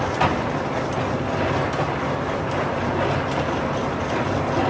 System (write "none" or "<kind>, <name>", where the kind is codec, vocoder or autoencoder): none